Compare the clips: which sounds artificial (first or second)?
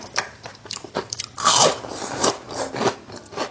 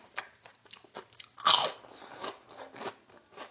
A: first